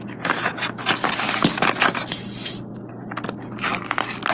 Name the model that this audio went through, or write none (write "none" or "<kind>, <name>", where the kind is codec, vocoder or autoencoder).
none